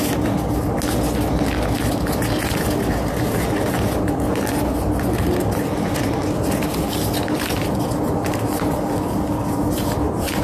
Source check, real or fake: real